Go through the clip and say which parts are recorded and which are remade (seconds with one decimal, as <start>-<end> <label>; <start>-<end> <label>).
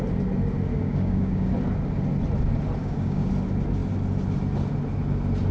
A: 0.0-0.7 recorded; 0.7-1.5 remade; 1.5-2.8 recorded; 2.8-3.3 remade; 3.3-5.5 recorded